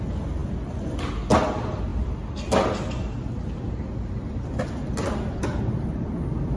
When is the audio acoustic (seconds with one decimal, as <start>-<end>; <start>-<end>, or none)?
0.0-6.6